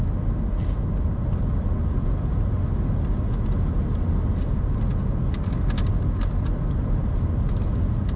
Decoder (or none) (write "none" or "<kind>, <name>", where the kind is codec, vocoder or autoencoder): none